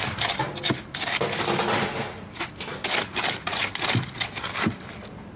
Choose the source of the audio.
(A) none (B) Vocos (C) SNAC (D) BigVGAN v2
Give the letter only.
A